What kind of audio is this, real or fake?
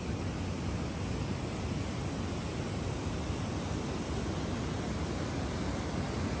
real